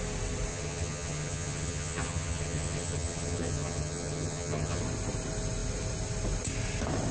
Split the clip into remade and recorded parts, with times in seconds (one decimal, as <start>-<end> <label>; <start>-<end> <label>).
0.0-0.5 recorded; 0.5-4.8 remade; 4.8-7.1 recorded